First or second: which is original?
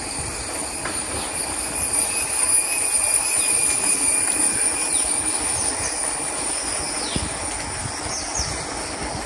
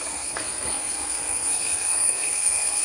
first